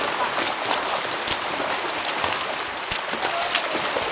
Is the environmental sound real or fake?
real